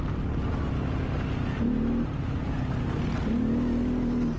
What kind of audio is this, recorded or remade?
recorded